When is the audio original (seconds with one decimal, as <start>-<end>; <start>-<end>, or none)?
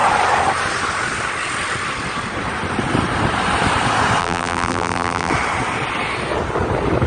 0.0-4.2; 5.3-7.1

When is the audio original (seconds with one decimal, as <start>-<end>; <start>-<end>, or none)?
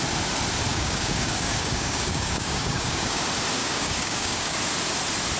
0.0-0.7; 3.2-3.6; 4.6-5.4